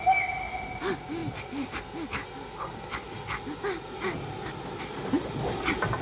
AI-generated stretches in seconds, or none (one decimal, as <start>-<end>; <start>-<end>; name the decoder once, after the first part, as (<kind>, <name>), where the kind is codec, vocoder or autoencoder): none